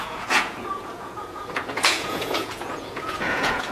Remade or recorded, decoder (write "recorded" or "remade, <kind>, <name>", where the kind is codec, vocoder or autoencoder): remade, vocoder, Vocos